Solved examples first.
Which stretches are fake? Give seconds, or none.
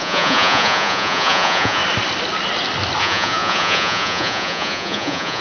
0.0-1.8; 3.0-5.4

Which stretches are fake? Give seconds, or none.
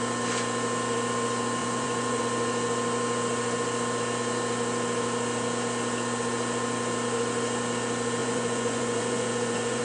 1.6-2.2; 8.2-9.8